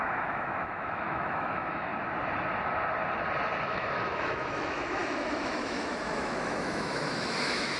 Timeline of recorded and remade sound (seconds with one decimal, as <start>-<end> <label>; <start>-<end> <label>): 0.0-1.9 remade; 1.9-3.6 recorded; 3.6-7.8 remade